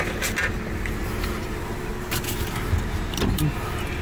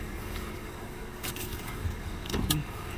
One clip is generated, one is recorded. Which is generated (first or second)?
second